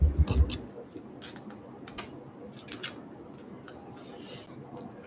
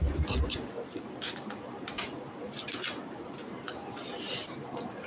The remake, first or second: second